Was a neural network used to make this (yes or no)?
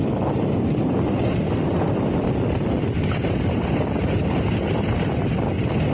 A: yes